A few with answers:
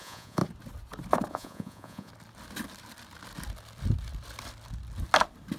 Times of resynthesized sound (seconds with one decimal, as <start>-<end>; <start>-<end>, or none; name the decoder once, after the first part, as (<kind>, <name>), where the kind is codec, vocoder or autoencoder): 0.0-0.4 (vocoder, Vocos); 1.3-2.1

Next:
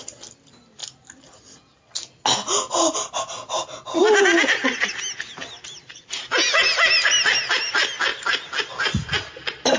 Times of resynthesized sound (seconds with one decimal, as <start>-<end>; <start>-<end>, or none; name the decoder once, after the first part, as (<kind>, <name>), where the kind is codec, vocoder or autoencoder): none

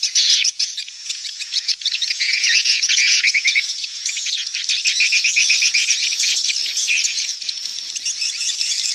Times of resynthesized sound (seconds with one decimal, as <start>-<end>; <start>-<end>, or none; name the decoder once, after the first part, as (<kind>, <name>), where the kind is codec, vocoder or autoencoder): 0.0-4.5 (vocoder, Vocos); 5.1-7.7

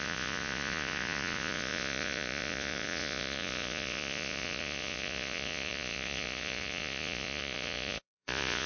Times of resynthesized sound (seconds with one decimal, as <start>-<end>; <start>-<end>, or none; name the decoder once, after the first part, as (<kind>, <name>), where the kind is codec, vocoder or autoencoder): 0.0-8.7 (vocoder, Vocos)